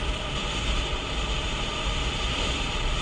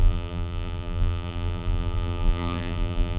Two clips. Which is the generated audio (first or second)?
second